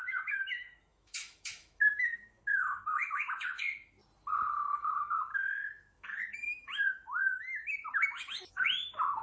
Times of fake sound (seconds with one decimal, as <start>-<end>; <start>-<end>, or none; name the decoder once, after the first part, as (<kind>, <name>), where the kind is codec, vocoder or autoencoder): 0.0-4.0 (autoencoder, DAC-VAE); 4.5-9.2